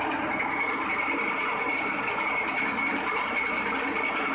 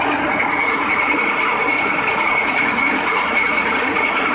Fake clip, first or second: second